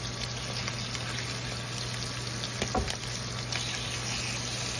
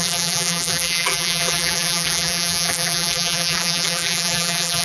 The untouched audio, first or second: first